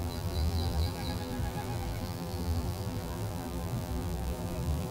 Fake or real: fake